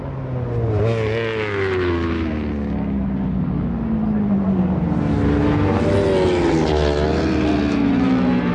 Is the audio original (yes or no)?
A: yes